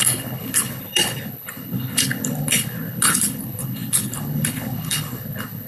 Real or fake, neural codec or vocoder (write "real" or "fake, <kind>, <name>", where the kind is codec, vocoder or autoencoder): fake, codec, HILCodec